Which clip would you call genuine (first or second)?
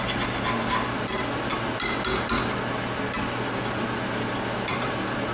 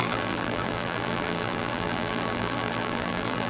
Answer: first